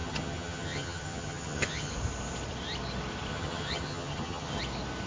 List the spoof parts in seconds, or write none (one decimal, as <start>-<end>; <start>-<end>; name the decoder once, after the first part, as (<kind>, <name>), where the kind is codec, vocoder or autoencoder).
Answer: 0.0-1.9 (vocoder, HiFi-GAN); 3.3-4.6

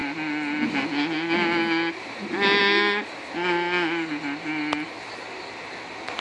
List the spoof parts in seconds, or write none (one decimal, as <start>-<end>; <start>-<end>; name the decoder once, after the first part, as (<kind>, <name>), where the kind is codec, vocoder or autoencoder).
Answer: none